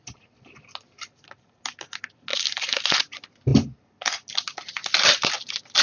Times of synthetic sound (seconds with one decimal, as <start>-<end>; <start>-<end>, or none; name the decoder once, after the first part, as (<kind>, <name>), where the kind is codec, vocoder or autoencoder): 2.3-3.0 (vocoder, BigVGAN v2)